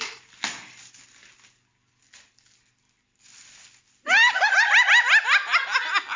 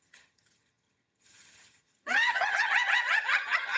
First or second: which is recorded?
first